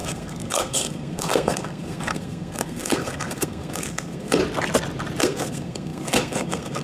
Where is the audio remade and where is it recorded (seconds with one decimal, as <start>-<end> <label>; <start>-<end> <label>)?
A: 0.0-4.4 remade; 4.4-5.2 recorded; 5.2-6.8 remade